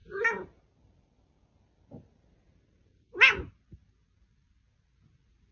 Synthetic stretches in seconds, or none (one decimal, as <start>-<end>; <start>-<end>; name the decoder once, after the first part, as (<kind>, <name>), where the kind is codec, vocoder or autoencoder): none